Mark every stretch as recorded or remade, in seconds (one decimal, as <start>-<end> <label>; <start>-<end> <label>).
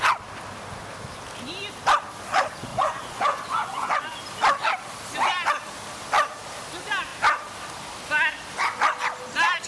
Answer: 0.0-2.7 recorded; 2.7-4.0 remade; 4.0-9.7 recorded